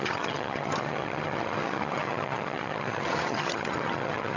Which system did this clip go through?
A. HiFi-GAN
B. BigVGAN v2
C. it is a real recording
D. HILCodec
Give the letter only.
A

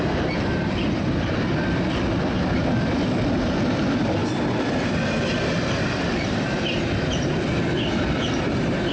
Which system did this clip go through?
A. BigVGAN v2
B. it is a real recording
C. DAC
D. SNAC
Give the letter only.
A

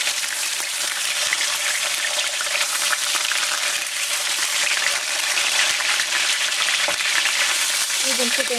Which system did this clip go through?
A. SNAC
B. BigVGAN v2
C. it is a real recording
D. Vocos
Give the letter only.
B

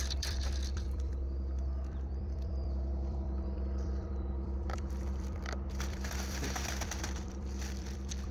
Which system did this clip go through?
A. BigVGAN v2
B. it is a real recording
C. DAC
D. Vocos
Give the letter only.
A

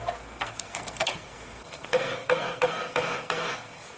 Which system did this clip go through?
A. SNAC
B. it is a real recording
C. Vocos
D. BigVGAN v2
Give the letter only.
A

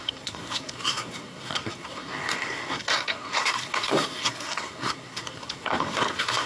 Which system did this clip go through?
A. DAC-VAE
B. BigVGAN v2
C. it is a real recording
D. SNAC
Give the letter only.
D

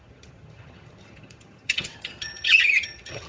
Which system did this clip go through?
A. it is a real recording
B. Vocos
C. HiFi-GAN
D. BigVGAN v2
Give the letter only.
C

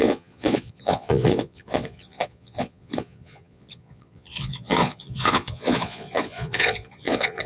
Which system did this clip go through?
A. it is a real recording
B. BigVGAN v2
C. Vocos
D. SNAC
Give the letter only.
C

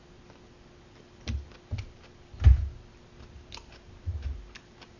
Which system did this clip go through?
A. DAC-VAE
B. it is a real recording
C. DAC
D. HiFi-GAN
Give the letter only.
B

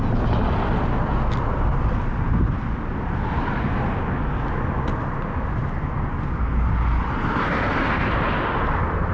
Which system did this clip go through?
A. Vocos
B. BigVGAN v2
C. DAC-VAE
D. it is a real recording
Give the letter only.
D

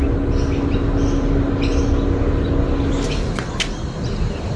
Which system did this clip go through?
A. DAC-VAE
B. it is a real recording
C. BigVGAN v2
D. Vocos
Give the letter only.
B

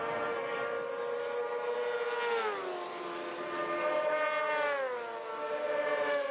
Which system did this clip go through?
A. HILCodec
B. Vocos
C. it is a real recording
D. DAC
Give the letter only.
C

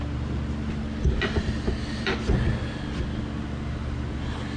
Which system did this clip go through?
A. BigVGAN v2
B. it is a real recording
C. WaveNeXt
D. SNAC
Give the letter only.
B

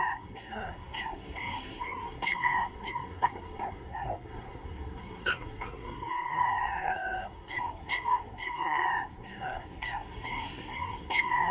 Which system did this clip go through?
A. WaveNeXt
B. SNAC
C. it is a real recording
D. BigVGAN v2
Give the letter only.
B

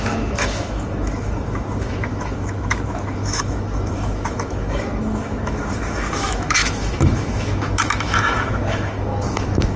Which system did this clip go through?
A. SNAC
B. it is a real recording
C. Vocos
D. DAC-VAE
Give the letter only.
D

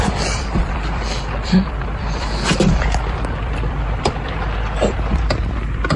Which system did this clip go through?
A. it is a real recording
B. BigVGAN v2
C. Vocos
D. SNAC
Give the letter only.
B